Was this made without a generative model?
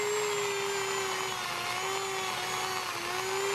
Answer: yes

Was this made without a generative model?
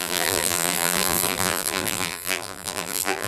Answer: no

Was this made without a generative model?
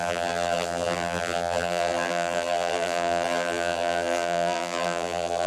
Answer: no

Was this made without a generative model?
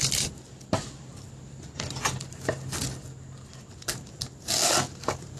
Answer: yes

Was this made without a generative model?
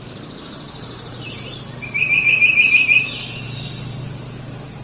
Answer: no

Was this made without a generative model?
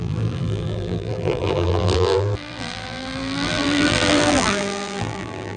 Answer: no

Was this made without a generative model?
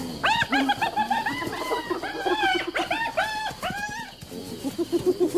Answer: yes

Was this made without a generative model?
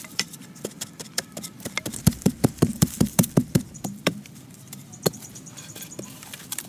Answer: no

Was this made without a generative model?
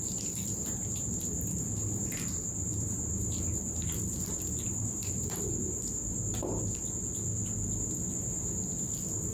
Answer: no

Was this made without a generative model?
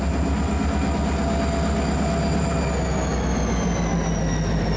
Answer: yes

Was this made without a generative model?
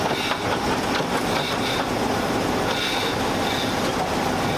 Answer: yes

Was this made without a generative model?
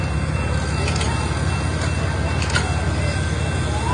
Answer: yes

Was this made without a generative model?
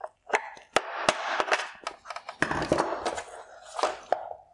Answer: yes